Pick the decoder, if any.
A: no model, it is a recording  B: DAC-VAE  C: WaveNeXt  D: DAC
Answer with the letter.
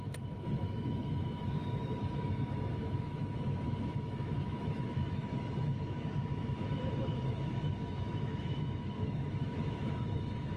B